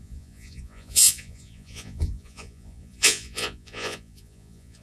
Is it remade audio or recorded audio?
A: remade